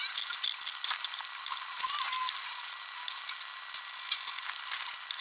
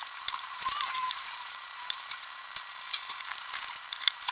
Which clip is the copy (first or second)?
second